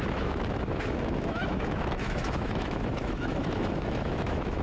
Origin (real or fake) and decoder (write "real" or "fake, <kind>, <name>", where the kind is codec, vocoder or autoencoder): fake, autoencoder, DAC-VAE